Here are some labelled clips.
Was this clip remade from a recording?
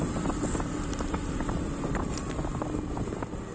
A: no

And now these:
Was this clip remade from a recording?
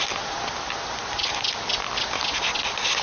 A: no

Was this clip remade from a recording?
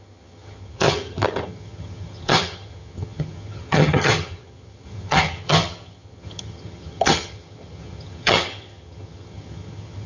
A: yes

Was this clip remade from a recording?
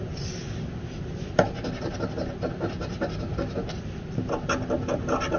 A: no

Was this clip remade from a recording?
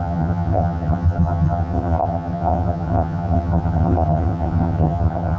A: yes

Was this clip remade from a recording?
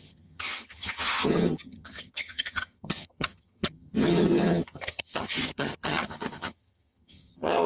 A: yes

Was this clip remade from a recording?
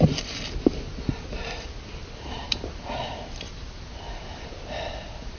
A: no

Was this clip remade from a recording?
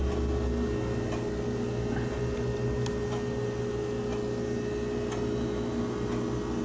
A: no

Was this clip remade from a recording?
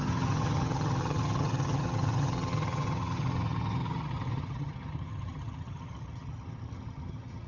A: yes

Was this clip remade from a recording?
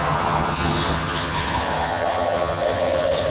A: yes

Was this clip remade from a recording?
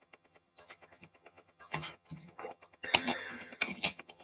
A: yes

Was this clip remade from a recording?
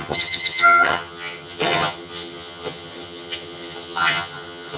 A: yes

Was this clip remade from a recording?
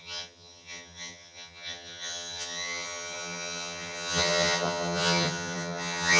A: yes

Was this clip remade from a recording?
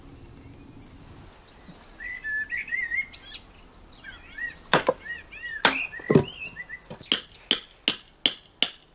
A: no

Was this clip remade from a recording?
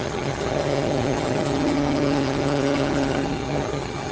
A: yes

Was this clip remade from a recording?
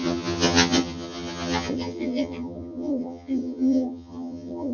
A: yes